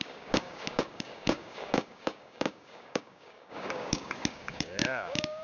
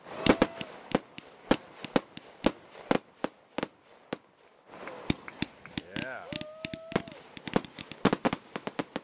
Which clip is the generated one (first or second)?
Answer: first